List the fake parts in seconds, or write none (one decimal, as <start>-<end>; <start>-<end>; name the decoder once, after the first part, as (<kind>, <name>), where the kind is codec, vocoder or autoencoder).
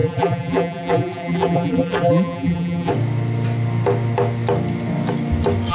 0.0-2.9 (vocoder, BigVGAN v2)